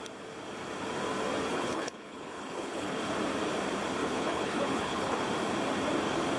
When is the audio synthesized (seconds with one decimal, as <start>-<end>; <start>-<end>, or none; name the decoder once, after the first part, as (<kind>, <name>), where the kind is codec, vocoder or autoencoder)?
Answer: 1.5-3.0 (codec, HILCodec); 4.0-5.3